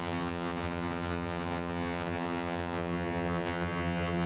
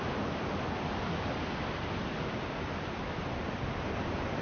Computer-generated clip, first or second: first